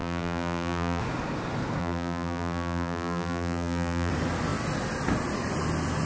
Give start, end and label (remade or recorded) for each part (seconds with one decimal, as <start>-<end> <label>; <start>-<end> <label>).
0.0-1.0 remade; 1.0-1.8 recorded; 1.8-4.1 remade; 4.1-6.1 recorded